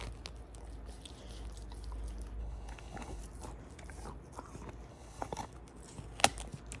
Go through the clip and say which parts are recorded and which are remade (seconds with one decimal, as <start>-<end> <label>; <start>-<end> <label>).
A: 0.0-2.4 recorded; 2.4-3.2 remade; 3.2-4.9 recorded; 4.9-5.5 remade; 5.5-6.8 recorded